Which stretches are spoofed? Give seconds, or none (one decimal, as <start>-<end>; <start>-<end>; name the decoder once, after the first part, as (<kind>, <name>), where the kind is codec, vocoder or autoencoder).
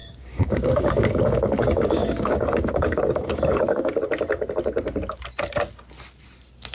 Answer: 0.0-4.0 (codec, DAC)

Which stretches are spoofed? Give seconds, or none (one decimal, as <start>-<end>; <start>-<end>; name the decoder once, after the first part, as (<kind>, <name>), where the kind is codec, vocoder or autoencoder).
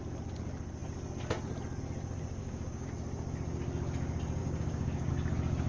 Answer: 2.4-2.9 (codec, DAC); 4.4-5.1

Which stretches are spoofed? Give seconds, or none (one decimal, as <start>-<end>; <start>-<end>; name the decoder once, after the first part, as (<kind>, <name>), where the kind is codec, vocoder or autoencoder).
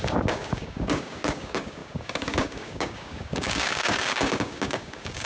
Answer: 0.0-5.3 (codec, DAC)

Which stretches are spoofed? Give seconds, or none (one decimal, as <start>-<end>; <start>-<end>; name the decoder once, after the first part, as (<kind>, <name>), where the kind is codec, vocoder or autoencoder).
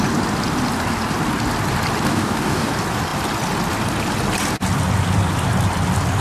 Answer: 2.1-2.7 (codec, DAC)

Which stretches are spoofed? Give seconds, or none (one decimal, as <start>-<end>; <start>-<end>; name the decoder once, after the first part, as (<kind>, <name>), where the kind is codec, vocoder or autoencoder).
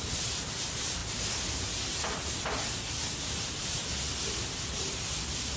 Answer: none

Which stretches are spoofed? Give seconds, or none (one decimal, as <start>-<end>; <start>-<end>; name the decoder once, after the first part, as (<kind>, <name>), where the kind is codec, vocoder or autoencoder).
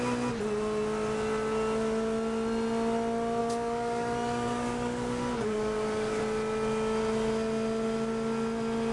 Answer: 3.4-6.2 (codec, DAC)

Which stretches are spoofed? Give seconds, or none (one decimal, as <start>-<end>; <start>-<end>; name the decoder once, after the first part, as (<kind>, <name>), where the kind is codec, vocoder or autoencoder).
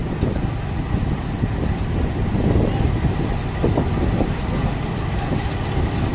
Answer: none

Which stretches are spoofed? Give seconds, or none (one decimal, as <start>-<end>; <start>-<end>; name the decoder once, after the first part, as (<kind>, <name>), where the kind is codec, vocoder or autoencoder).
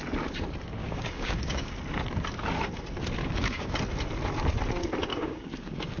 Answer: 0.8-1.7 (codec, DAC); 3.2-3.8; 5.1-6.0